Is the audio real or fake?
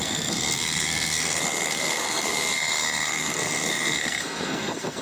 fake